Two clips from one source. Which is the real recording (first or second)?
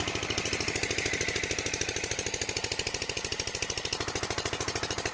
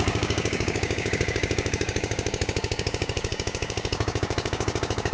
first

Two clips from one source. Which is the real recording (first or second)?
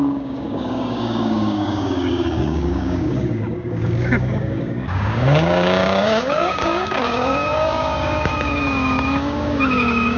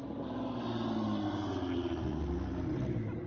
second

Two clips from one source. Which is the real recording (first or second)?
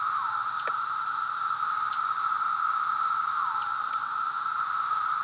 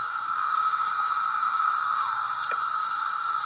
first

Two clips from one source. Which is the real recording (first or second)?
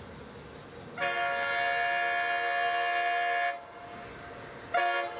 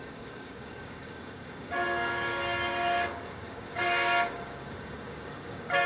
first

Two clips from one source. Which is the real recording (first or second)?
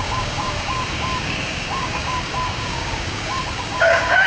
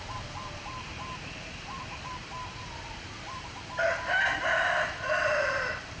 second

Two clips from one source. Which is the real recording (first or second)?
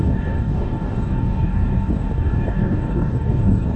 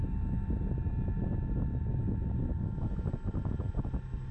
second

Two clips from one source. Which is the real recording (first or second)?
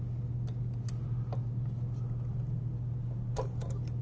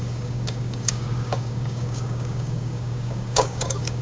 first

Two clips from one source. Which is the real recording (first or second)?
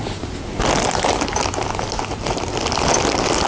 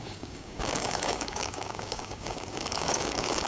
first